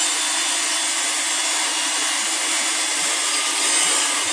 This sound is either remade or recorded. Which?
recorded